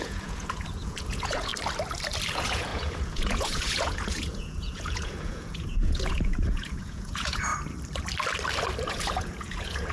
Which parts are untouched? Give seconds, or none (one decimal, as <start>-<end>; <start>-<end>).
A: 1.5-2.3; 7.5-8.9